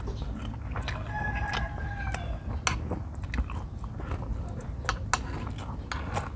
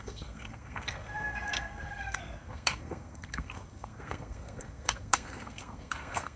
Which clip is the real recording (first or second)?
first